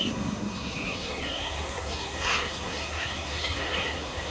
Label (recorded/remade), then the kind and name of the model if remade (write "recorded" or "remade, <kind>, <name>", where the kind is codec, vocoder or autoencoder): remade, codec, SNAC